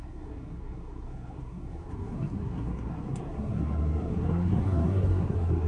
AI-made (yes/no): yes